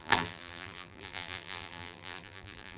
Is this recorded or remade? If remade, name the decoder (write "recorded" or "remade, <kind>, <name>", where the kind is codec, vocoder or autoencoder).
remade, vocoder, BigVGAN v2